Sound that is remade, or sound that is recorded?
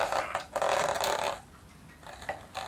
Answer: recorded